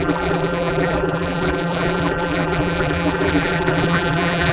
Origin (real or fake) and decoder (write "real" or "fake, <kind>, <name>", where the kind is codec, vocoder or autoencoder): fake, vocoder, BigVGAN v2